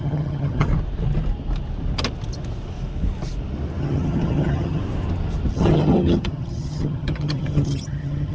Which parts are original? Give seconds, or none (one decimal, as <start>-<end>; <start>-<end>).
0.7-3.8; 4.8-5.5

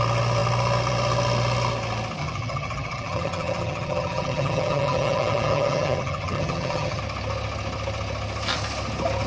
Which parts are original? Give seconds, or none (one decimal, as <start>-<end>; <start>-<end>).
0.0-2.2; 7.0-9.3